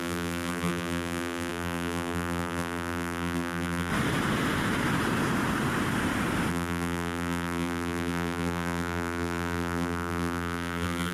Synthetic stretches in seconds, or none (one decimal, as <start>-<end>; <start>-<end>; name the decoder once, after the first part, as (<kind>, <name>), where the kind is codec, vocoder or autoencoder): 0.0-3.9 (vocoder, BigVGAN v2); 6.5-11.1